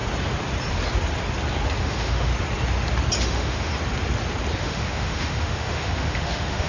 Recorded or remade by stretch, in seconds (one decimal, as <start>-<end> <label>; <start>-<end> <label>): 0.0-1.8 recorded; 1.8-2.3 remade; 2.3-3.2 recorded; 3.2-3.7 remade; 3.7-4.6 recorded; 4.6-6.7 remade